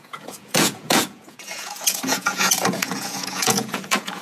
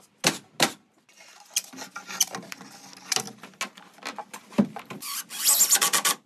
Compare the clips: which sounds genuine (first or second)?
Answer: second